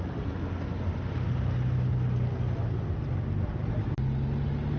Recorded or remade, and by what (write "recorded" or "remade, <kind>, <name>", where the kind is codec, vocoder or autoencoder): recorded